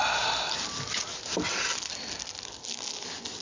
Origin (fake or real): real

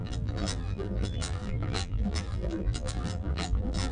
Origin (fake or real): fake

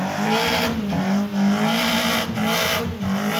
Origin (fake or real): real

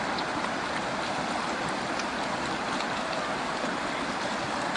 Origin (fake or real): real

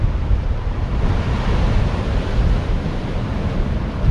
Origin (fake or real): fake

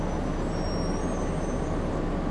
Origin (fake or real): real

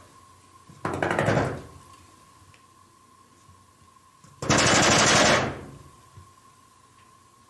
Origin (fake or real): real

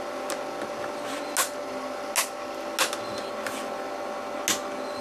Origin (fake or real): real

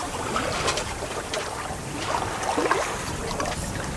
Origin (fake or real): fake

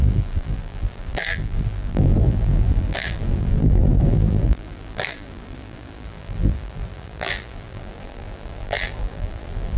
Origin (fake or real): fake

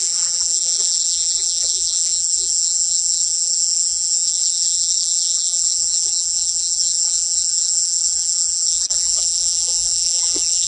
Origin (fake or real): fake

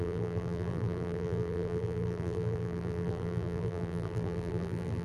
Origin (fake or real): fake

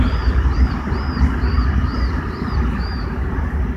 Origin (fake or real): real